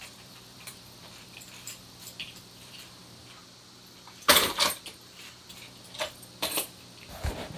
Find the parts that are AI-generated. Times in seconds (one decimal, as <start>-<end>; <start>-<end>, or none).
0.0-3.0